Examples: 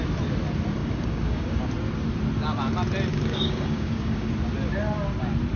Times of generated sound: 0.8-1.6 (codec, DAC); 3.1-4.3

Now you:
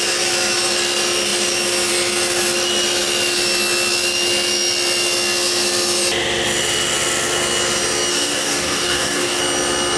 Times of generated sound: 8.1-9.4 (codec, DAC)

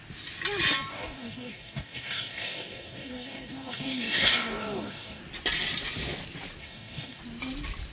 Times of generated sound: 0.9-5.2 (codec, DAC); 6.6-7.2

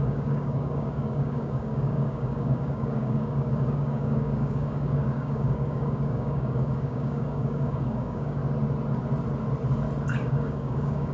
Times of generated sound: 0.0-8.4 (codec, DAC); 10.1-11.1

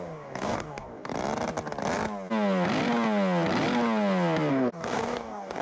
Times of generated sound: 0.0-1.1 (codec, DAC); 4.5-5.6